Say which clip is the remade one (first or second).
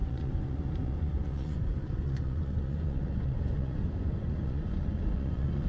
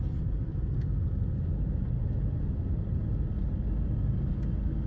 first